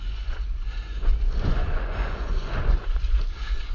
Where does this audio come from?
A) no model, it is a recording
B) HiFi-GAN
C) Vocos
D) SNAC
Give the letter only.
C